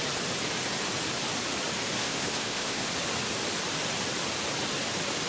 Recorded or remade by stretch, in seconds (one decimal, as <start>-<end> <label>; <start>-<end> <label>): 0.0-2.0 recorded; 2.0-2.9 remade; 2.9-5.3 recorded